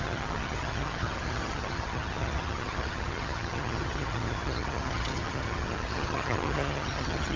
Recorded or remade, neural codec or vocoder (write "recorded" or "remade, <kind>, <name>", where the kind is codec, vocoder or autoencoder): remade, vocoder, HiFi-GAN